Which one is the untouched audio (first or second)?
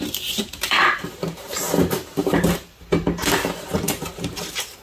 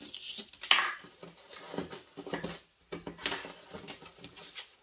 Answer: second